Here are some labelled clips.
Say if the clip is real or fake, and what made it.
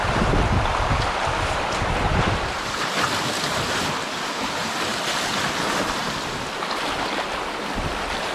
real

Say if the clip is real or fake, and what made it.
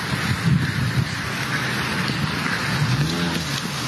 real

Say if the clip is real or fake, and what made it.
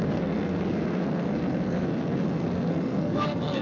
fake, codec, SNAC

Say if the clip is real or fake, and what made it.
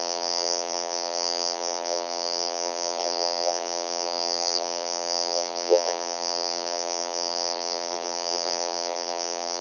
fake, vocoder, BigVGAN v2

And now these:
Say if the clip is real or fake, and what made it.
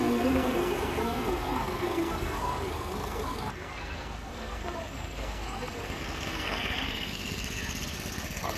fake, codec, SNAC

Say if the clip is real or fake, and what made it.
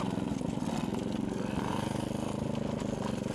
real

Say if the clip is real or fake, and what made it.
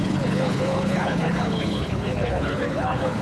fake, codec, HILCodec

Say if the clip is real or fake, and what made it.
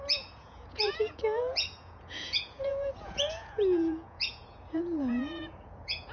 fake, vocoder, Vocos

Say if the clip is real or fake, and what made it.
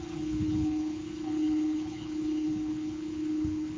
fake, codec, HILCodec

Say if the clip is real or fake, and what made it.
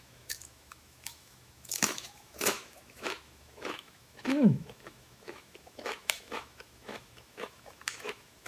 fake, autoencoder, DAC-VAE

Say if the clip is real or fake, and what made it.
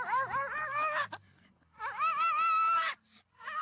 real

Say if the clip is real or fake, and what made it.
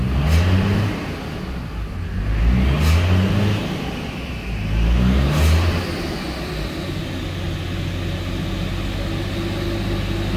real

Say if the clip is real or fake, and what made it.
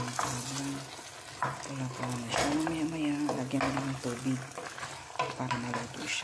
real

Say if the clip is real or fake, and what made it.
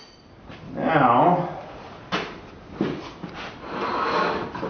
real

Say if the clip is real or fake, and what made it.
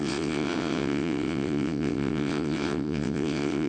fake, vocoder, WaveNeXt